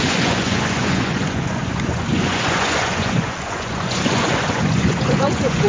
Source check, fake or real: fake